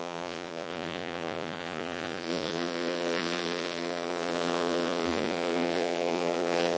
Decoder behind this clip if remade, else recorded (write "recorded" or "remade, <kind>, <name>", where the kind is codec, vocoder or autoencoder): remade, vocoder, Vocos